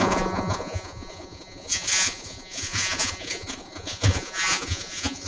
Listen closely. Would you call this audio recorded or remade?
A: remade